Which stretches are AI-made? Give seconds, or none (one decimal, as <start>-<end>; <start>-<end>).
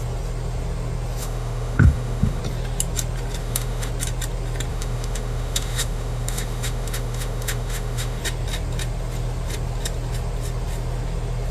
1.2-2.4; 3.4-3.9; 4.7-8.2